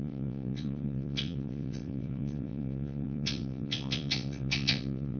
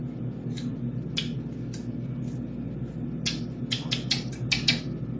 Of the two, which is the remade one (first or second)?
first